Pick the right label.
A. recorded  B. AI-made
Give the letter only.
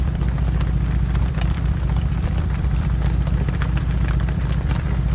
B